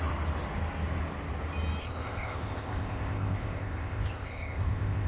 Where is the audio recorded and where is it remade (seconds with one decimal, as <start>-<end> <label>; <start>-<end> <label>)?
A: 0.0-1.8 recorded; 1.8-5.1 remade